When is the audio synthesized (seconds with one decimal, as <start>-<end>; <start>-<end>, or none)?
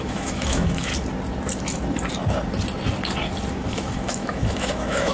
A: 0.0-0.9; 3.5-5.1